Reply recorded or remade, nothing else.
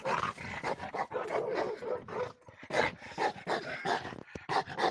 recorded